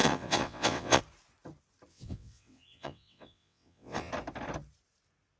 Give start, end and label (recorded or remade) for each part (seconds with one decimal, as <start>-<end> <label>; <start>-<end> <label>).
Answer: 0.0-1.0 remade; 1.0-1.9 recorded; 1.9-4.1 remade; 4.1-5.4 recorded